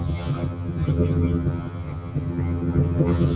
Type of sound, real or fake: fake